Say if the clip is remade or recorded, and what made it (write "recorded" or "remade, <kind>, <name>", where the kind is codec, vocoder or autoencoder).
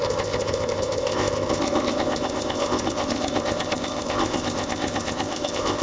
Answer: remade, codec, ZipCodec